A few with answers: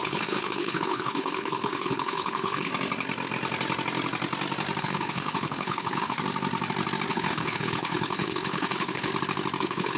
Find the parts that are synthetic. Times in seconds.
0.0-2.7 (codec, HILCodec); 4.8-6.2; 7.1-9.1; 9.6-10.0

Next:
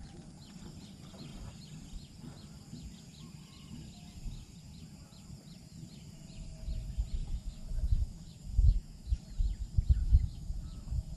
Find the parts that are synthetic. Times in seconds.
7.2-9.2 (autoencoder, DAC-VAE); 10.0-11.2

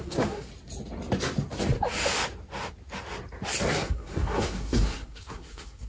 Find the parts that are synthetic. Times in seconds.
0.0-0.5 (codec, SNAC); 3.7-5.9